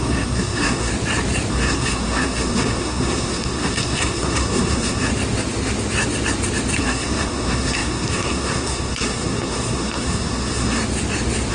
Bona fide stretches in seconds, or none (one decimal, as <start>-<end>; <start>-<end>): 0.9-1.5; 5.1-6.8; 10.8-11.5